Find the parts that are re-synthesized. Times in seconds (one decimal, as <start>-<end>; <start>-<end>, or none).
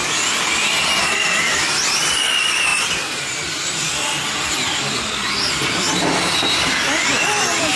2.7-3.8; 5.2-6.7